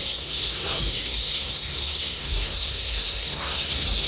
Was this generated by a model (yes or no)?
yes